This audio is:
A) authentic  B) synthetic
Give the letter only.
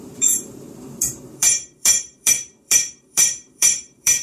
B